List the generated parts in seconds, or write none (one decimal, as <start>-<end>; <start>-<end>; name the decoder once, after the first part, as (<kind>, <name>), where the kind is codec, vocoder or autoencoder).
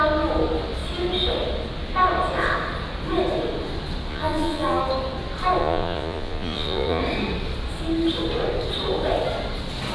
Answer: 4.1-4.8 (vocoder, Vocos); 5.6-7.0